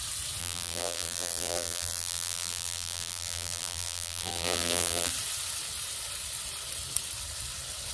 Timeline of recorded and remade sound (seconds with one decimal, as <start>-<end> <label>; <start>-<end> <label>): 0.0-0.4 recorded; 0.4-5.1 remade; 5.1-7.9 recorded